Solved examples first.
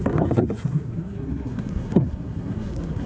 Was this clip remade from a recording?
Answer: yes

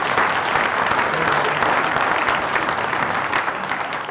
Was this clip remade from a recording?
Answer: no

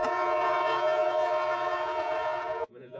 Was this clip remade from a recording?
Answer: yes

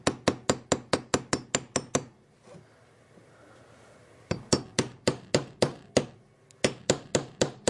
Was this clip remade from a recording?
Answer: no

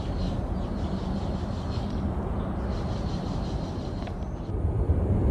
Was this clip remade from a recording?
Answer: yes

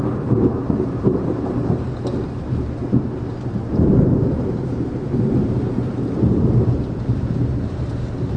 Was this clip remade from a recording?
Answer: yes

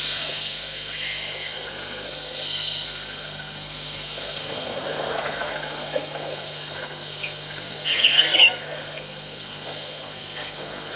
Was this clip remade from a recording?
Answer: yes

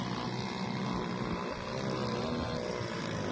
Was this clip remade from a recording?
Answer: no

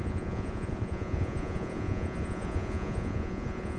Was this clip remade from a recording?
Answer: yes